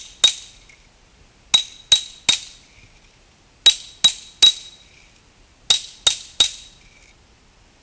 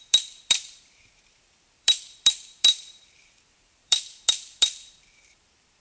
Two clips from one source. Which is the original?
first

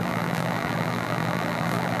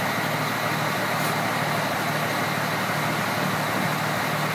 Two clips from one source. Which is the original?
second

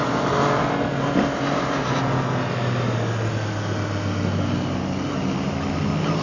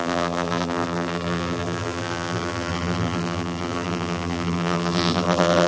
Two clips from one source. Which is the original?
first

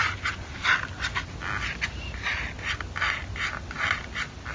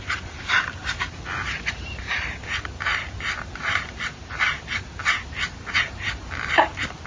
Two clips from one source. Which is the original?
first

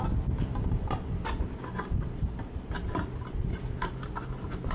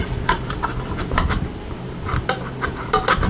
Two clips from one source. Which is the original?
first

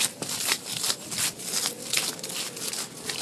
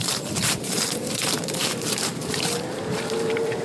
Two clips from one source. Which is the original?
first